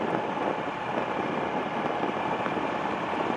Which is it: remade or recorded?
recorded